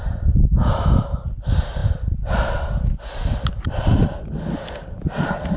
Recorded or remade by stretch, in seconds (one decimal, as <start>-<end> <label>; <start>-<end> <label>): 0.0-5.6 recorded